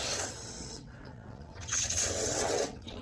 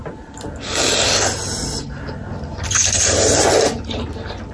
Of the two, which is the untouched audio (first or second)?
second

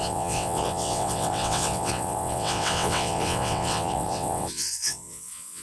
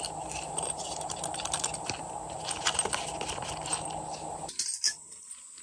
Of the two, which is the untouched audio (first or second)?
second